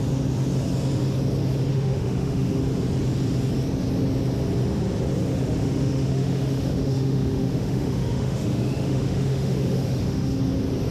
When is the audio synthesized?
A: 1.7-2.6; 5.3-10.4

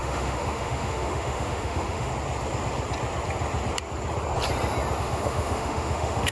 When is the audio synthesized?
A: 0.0-2.1; 5.0-6.3

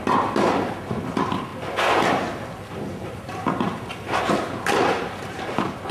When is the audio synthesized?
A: none